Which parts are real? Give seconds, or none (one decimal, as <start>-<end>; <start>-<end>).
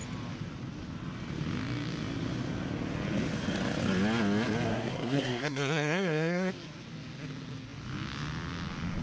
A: 0.0-4.7; 6.5-9.0